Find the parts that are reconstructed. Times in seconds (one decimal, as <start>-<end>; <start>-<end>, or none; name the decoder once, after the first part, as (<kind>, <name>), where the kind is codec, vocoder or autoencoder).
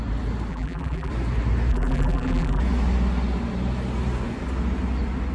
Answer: 0.5-1.1 (vocoder, BigVGAN v2); 1.7-2.6